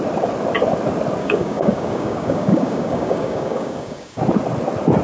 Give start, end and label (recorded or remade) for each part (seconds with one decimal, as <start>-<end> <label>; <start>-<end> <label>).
0.0-1.2 recorded; 1.2-4.2 remade; 4.2-5.0 recorded